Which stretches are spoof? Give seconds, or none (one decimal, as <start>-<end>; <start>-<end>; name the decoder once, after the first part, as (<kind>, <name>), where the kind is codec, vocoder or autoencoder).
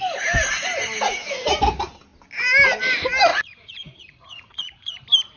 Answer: 3.3-5.0 (vocoder, Vocos)